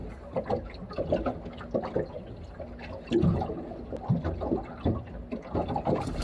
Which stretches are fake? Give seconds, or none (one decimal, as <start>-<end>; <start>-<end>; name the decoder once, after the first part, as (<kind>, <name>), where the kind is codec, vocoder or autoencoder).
none